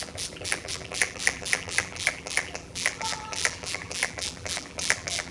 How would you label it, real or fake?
fake